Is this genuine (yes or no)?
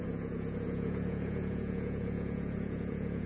no